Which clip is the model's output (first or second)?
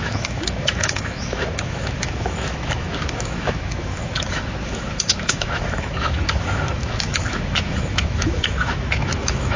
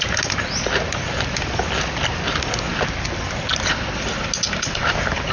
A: first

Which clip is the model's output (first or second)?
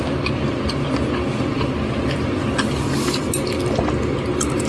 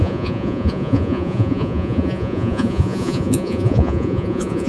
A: second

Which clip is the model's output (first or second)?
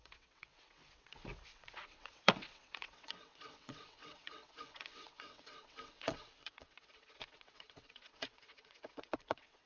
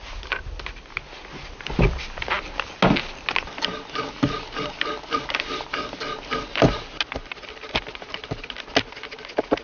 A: first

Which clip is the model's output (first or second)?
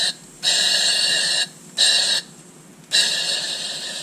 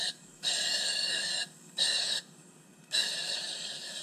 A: second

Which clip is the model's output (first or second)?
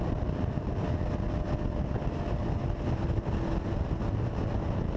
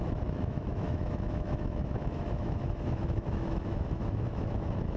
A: second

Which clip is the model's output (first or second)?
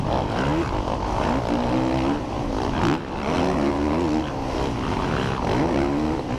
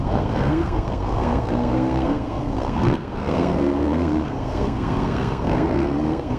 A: second